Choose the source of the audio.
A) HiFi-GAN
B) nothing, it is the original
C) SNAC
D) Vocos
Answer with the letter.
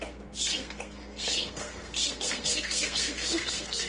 C